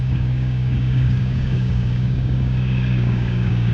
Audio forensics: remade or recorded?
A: remade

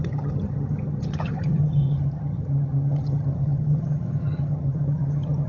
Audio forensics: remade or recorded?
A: remade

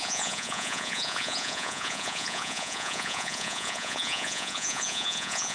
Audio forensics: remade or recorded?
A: remade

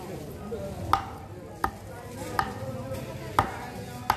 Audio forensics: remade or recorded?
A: recorded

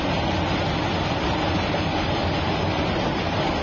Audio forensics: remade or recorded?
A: recorded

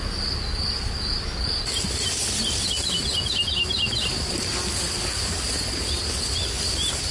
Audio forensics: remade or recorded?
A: recorded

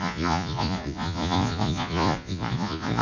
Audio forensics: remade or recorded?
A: remade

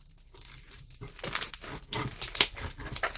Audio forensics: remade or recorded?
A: recorded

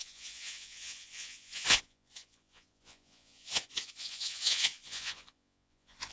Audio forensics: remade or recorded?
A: remade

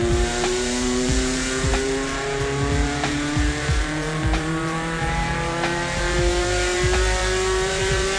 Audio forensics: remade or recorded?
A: remade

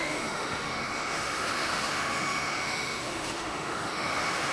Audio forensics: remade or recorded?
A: remade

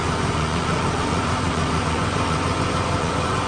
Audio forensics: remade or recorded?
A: remade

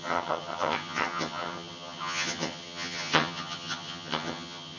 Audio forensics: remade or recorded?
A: remade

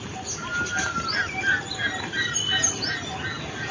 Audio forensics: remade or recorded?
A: recorded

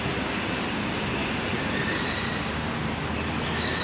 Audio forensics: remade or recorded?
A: recorded